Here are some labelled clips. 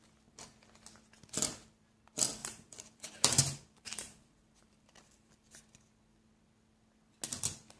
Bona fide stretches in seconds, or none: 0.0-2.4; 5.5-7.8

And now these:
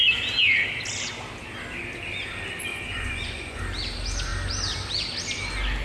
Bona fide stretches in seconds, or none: 0.0-2.7; 3.6-5.8